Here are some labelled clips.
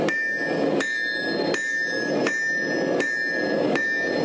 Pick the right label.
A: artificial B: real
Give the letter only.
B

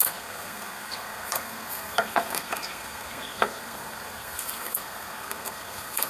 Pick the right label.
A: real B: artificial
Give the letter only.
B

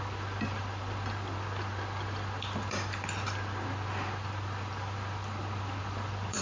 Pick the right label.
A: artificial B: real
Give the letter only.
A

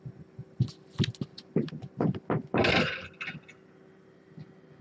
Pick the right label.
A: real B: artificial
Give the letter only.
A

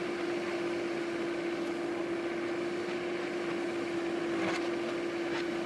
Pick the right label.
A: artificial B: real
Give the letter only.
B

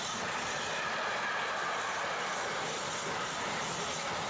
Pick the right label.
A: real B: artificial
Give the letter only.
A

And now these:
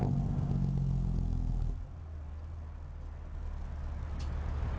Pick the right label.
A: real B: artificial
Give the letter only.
A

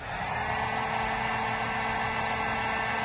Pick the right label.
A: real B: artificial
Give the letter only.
A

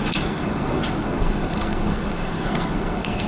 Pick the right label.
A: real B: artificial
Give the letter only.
B